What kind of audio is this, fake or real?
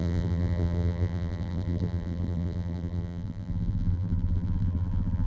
fake